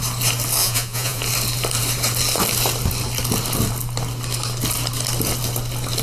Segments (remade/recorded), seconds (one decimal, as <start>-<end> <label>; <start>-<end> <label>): 0.0-0.6 recorded; 0.6-1.2 remade; 1.2-6.0 recorded